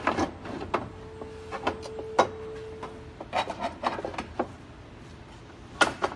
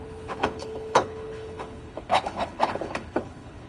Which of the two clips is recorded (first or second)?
first